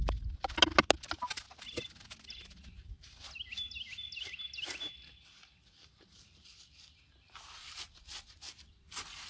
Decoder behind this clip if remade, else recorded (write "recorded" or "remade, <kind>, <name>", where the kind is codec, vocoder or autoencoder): recorded